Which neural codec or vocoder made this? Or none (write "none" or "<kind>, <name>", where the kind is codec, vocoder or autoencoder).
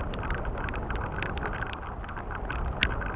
none